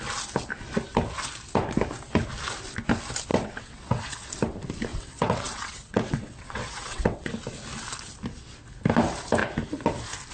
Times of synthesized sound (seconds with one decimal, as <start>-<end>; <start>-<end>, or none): 3.3-4.3; 4.9-7.3